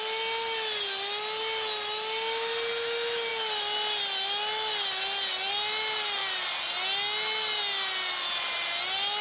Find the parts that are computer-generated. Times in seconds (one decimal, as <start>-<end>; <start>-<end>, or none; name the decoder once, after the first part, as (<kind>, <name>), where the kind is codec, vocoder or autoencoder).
none